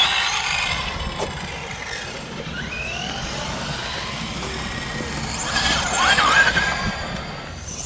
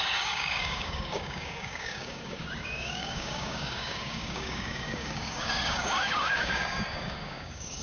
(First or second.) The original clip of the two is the first